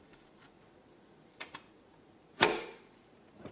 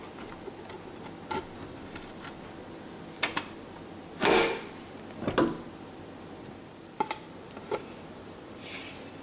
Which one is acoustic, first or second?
second